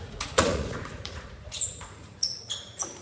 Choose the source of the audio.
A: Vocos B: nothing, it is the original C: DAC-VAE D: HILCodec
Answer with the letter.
A